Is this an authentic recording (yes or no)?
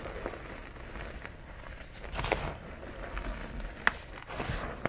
yes